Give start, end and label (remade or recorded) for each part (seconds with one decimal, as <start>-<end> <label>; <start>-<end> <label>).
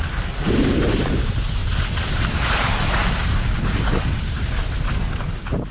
0.0-5.7 recorded